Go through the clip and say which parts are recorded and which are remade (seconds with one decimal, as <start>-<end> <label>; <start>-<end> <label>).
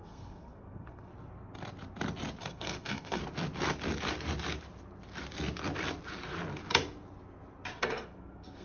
0.0-1.1 remade; 1.1-2.4 recorded; 2.4-3.2 remade; 3.2-7.8 recorded; 7.8-8.6 remade